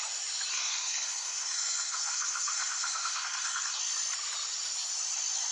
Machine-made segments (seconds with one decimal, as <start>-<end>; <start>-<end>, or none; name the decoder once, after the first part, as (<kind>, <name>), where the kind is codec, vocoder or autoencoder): 0.5-3.8 (codec, SNAC)